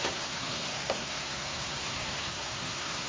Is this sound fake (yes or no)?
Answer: yes